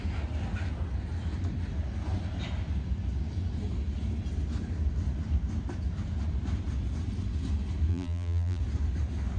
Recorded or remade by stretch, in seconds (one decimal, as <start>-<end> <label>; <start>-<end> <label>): 0.0-7.9 recorded; 7.9-8.6 remade; 8.6-9.4 recorded